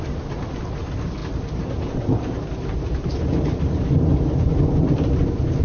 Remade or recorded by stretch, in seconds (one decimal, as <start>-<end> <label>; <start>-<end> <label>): 0.0-5.6 recorded